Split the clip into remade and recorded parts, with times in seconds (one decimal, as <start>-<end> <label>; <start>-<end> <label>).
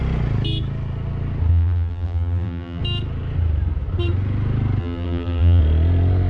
0.0-1.5 recorded; 1.5-2.8 remade; 2.8-4.8 recorded; 4.8-5.6 remade; 5.6-6.3 recorded